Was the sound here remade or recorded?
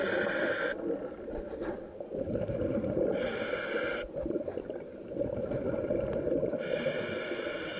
remade